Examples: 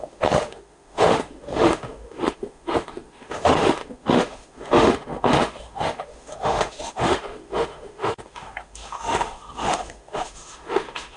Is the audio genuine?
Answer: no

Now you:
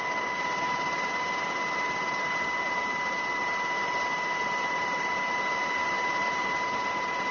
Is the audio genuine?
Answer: yes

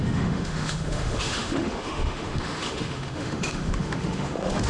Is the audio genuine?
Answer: no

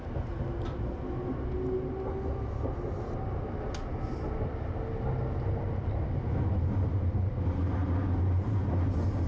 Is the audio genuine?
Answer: yes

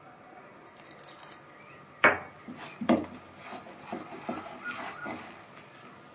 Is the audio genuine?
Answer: yes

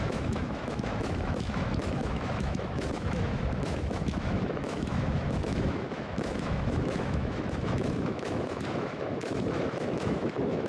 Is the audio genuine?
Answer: no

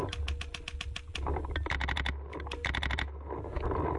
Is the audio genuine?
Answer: yes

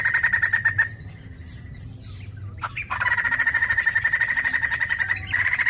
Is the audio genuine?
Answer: yes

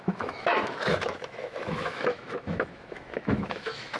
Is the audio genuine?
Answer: no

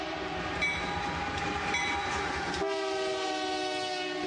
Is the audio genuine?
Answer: yes